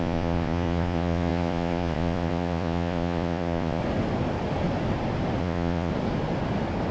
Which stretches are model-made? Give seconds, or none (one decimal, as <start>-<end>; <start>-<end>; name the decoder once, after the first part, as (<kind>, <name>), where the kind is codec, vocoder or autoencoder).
0.0-3.8 (vocoder, Vocos); 5.4-5.9